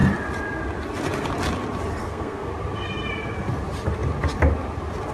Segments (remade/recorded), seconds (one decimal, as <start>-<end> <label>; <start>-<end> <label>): 0.0-2.0 recorded; 2.0-2.5 remade; 2.5-5.1 recorded